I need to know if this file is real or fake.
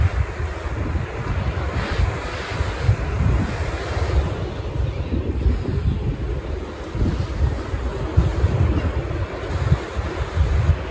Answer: real